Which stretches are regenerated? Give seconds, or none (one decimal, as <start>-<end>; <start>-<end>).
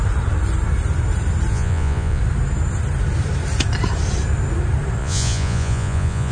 1.5-2.2; 5.0-6.3